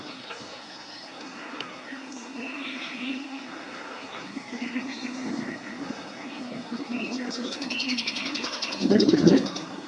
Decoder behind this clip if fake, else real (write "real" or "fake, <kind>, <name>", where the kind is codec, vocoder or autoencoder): fake, codec, SNAC